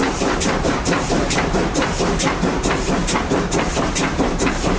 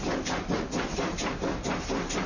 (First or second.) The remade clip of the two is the first